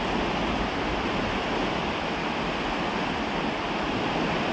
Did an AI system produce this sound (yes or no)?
no